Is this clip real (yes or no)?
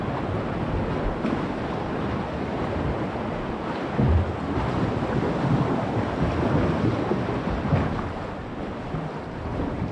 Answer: yes